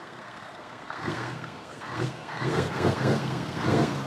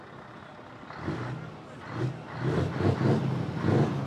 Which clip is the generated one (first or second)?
first